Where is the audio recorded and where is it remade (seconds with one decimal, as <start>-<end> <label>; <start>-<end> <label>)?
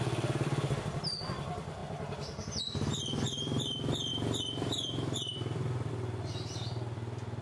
0.0-1.8 remade; 1.8-2.6 recorded; 2.6-7.4 remade